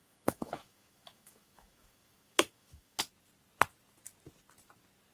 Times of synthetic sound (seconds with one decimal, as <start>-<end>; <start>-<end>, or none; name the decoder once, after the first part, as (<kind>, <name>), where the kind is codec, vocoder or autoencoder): 0.0-3.0 (autoencoder, DAC-VAE)